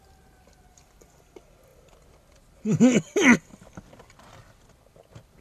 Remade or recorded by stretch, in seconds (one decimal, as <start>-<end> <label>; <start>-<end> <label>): 0.0-5.4 recorded